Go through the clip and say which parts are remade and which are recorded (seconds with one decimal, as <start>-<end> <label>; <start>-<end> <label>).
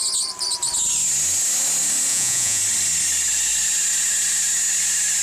0.0-2.1 recorded; 2.1-2.6 remade; 2.6-5.2 recorded